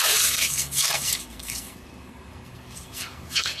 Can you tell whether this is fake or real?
fake